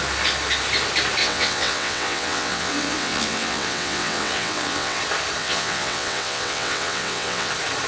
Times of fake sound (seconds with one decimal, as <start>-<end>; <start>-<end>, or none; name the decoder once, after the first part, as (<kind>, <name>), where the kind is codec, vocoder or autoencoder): 1.2-5.0 (vocoder, WaveNeXt); 5.4-7.5